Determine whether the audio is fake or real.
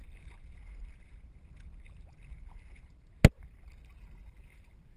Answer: real